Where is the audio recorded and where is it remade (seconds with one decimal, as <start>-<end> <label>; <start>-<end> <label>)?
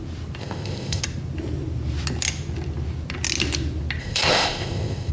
0.0-0.4 recorded; 0.4-1.0 remade; 1.0-4.0 recorded; 4.0-5.1 remade